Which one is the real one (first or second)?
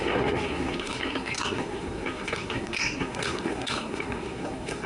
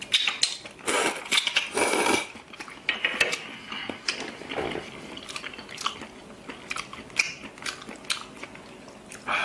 second